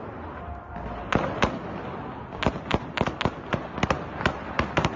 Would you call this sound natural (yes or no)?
yes